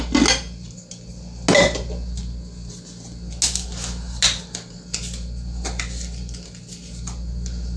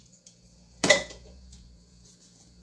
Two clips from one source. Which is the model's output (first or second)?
second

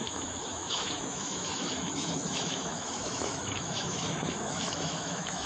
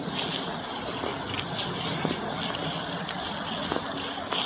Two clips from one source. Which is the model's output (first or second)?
first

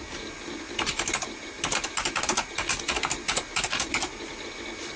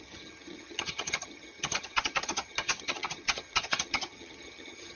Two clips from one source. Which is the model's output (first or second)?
second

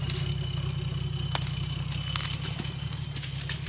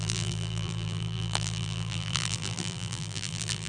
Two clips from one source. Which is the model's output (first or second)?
second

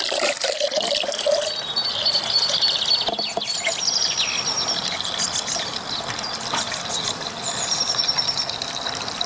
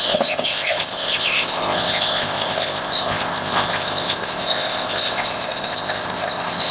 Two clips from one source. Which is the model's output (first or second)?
second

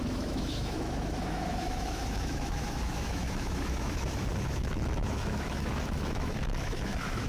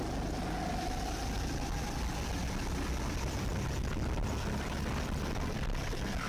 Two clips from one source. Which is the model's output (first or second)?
first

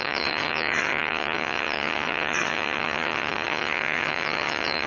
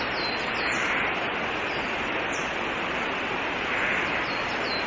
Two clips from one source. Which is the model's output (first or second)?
first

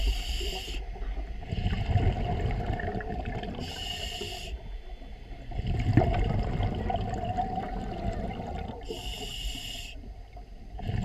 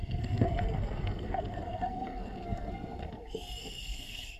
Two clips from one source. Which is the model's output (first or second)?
second